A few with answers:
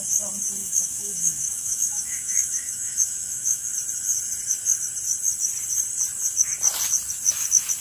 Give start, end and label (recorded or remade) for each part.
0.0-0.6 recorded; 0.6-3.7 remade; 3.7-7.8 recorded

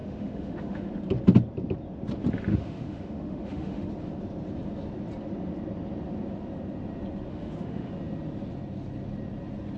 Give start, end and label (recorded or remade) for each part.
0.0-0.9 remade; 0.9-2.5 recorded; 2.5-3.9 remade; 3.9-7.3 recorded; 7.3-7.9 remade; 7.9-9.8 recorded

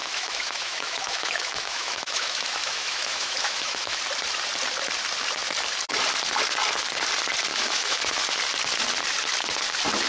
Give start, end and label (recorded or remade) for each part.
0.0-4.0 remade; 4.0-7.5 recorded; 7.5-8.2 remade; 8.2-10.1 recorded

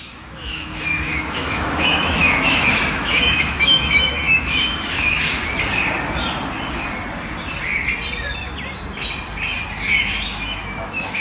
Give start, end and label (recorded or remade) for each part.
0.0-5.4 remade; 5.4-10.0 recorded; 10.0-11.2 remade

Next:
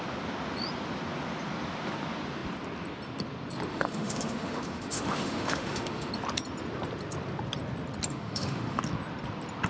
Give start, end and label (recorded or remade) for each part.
0.0-3.7 recorded; 3.7-6.1 remade; 6.1-8.1 recorded; 8.1-8.8 remade; 8.8-9.7 recorded